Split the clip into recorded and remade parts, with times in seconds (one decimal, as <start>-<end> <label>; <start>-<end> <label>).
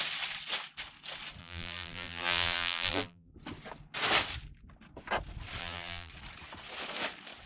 0.0-1.4 recorded; 1.4-3.3 remade; 3.3-5.6 recorded; 5.6-6.1 remade; 6.1-7.5 recorded